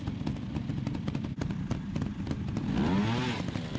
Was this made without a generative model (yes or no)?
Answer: yes